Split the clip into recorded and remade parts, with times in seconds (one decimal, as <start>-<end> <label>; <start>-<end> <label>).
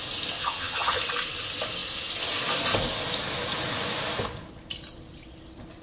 0.0-0.4 recorded; 0.4-1.0 remade; 1.0-5.8 recorded